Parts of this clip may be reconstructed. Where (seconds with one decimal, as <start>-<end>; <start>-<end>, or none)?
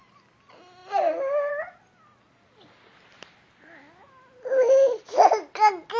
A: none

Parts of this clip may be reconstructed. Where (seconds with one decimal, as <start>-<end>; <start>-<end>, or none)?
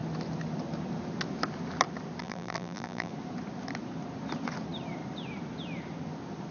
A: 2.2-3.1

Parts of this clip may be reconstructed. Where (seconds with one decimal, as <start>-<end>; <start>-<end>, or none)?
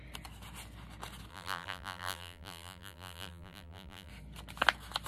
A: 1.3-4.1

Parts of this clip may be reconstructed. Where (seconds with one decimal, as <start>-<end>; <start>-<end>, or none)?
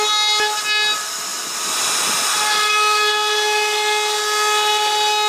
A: none